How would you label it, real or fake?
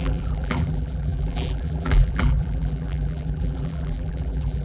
fake